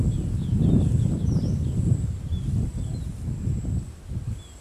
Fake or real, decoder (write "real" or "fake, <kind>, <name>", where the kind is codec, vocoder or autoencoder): real